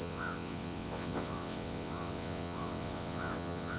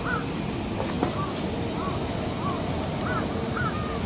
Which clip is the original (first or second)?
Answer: second